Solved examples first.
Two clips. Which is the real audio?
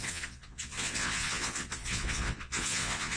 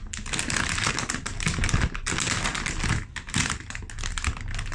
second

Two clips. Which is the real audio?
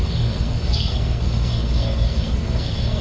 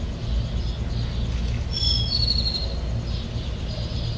second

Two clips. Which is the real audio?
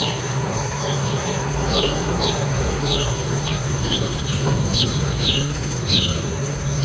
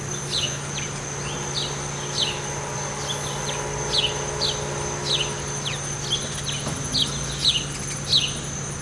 second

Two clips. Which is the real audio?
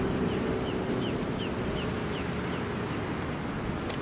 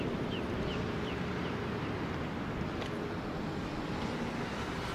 first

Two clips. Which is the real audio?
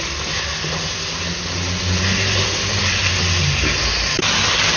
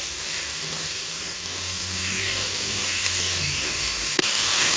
first